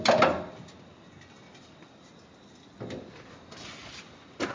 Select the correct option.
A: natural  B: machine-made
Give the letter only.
A